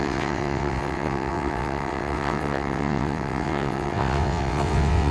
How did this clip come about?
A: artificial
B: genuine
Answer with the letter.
A